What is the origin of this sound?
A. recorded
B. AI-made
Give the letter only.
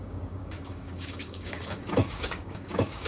B